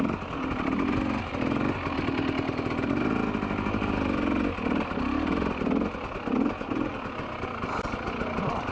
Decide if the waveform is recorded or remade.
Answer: recorded